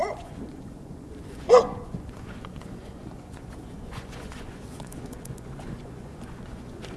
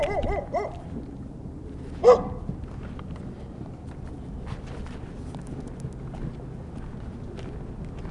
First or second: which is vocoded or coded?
first